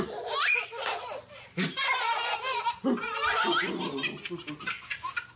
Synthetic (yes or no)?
no